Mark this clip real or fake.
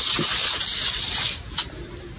real